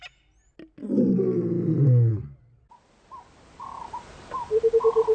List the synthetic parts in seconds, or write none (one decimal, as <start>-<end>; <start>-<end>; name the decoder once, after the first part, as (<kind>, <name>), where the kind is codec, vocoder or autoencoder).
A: none